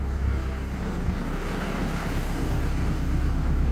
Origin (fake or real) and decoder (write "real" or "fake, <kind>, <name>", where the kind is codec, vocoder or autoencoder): fake, codec, DAC